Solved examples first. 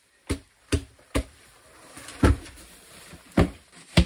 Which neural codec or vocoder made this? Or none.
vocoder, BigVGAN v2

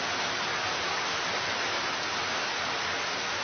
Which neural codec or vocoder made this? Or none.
none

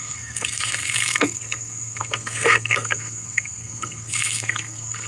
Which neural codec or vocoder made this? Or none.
codec, SNAC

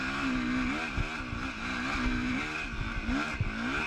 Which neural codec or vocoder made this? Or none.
none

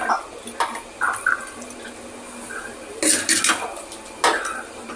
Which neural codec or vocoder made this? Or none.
none